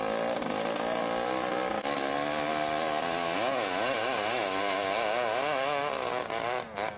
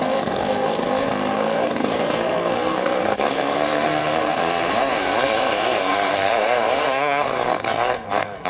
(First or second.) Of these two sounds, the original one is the first